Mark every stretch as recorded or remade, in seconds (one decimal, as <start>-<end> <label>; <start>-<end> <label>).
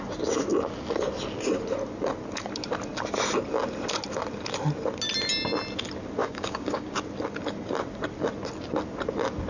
0.0-6.2 recorded; 6.2-7.0 remade; 7.0-9.5 recorded